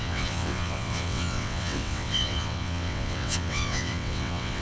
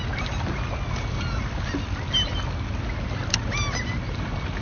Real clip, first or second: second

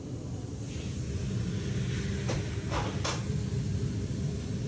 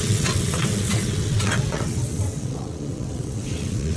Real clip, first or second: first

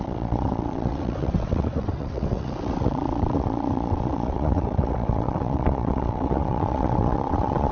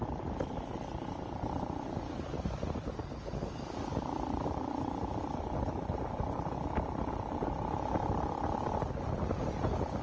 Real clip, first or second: second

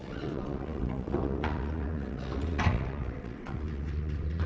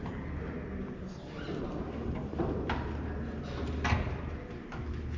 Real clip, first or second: second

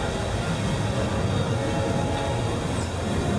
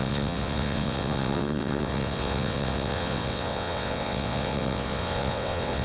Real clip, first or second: first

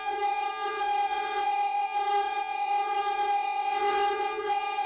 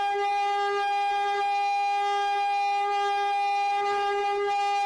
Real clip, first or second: second